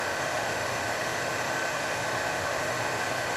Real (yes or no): no